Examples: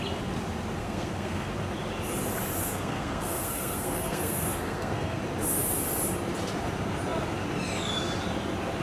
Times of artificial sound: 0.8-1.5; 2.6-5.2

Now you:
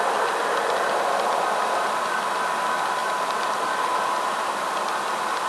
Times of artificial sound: none

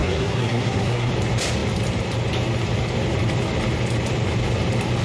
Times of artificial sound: 0.0-1.1

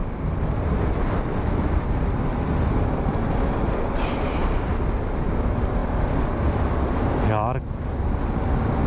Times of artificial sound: 0.0-3.3